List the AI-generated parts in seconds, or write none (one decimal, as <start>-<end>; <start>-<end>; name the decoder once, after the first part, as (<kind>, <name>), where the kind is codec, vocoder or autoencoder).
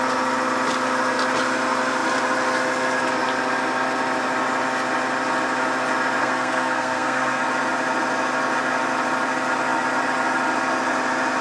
6.2-7.4 (codec, SNAC)